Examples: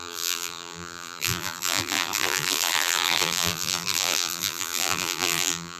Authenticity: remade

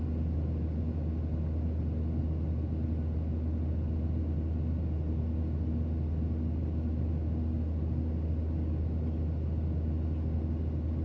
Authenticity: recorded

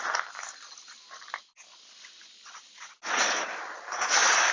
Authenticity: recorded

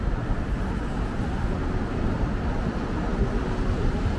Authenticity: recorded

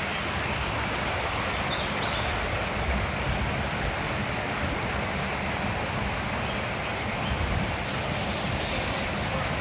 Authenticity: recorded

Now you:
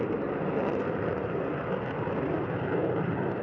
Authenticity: recorded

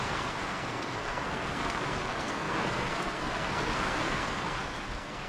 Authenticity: remade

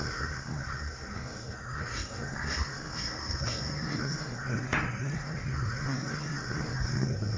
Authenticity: remade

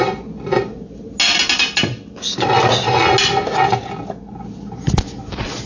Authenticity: recorded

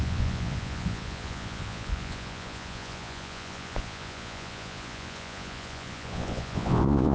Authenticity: remade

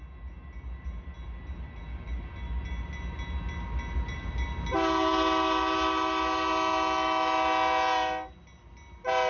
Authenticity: recorded